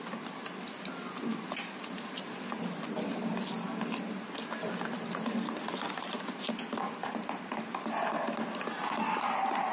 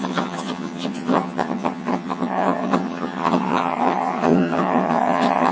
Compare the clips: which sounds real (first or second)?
first